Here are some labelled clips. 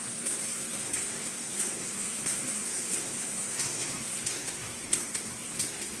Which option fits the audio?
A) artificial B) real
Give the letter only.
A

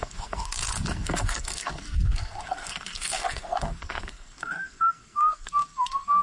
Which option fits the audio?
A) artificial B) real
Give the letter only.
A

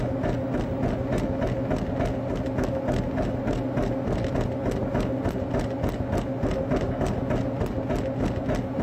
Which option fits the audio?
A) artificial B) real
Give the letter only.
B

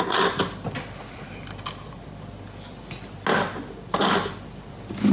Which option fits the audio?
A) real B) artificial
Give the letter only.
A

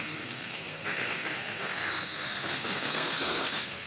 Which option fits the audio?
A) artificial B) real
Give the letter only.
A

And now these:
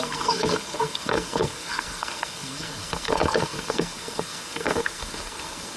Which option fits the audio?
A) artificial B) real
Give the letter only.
A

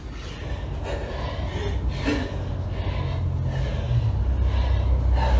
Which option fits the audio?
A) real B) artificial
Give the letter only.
A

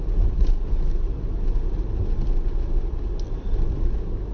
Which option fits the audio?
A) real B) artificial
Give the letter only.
A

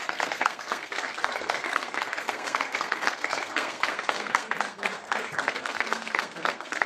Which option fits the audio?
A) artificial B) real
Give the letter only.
A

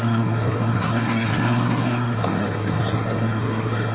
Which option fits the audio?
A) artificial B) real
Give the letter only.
A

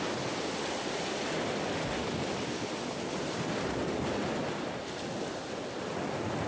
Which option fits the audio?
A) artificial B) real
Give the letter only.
B